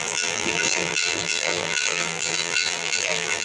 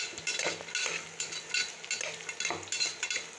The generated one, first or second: first